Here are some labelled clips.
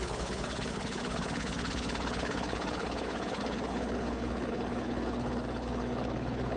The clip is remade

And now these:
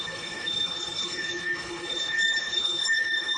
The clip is remade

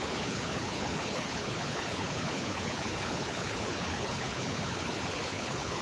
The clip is remade